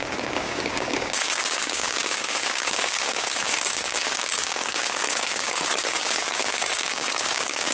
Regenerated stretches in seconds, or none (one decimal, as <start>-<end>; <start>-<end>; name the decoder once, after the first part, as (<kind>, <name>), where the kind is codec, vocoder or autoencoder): 0.0-7.7 (codec, DAC)